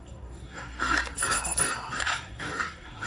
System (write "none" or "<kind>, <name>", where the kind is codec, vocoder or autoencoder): codec, SNAC